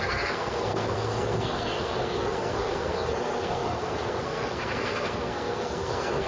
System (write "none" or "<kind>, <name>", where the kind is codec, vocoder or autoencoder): codec, SNAC